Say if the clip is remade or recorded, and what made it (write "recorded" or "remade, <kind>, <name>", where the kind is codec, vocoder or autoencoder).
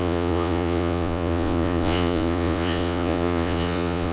remade, vocoder, Vocos